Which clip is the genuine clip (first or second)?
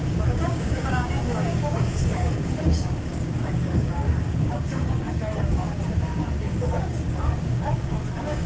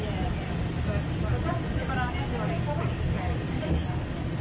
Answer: second